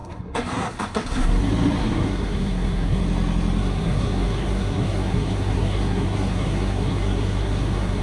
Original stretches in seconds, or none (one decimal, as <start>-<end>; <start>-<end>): 1.4-1.8; 3.0-3.6

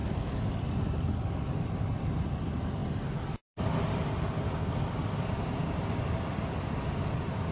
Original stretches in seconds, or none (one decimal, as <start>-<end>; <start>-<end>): 0.0-7.5